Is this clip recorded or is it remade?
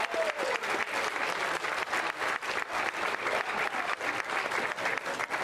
recorded